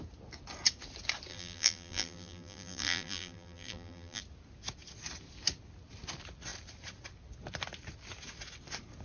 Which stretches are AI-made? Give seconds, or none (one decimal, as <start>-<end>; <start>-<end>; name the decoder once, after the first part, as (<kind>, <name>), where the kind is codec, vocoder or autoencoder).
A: 1.3-4.2 (vocoder, BigVGAN v2)